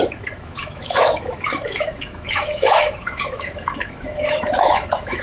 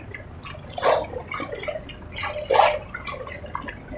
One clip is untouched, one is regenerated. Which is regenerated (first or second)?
first